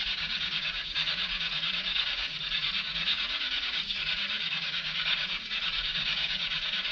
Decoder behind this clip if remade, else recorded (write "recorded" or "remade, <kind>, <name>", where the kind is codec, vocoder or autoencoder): remade, codec, DAC